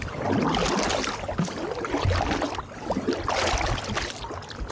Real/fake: real